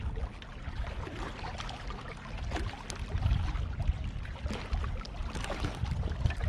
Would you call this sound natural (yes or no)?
yes